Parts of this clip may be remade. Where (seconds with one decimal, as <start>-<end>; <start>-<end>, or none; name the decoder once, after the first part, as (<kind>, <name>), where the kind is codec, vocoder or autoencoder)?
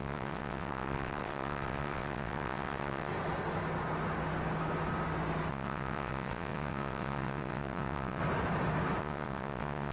0.0-3.1 (vocoder, WaveNeXt); 5.5-8.2; 9.0-9.9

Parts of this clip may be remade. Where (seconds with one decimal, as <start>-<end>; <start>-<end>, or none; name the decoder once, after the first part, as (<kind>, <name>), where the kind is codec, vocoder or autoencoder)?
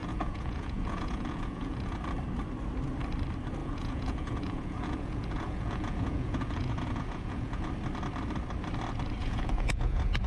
0.0-2.0 (vocoder, Vocos); 3.6-7.7; 9.2-10.3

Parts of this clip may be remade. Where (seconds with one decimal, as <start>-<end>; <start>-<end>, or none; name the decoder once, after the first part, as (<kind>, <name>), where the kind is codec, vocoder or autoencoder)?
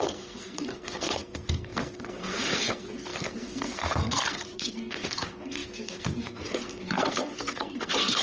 0.0-8.2 (codec, SNAC)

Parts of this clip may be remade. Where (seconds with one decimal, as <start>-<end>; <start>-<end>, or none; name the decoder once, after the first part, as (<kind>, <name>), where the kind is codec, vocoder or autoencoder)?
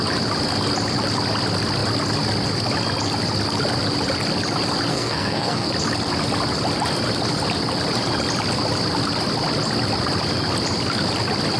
4.9-5.7 (codec, SNAC)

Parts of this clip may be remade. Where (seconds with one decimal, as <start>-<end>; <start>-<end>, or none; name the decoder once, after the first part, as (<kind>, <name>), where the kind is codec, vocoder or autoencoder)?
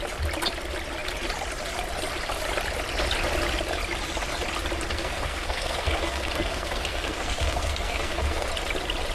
4.9-8.5 (codec, SNAC)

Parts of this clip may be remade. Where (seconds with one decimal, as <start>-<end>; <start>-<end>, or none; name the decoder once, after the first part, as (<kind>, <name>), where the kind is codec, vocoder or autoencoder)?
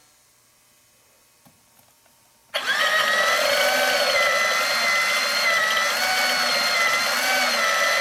none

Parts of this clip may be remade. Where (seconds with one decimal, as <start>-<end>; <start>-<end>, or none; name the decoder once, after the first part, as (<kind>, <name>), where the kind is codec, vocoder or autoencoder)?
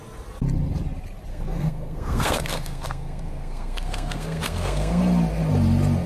1.3-5.0 (codec, SNAC)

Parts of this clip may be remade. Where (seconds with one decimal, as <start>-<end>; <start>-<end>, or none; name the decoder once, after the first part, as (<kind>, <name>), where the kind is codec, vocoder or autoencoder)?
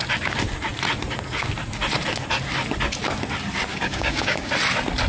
3.7-4.5 (codec, DAC)